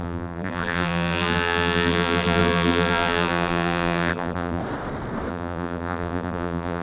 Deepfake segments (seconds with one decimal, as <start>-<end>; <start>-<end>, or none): 0.0-4.6; 5.3-6.8